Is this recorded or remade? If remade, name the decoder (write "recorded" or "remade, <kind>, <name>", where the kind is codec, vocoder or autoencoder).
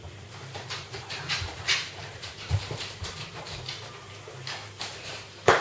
remade, vocoder, BigVGAN v2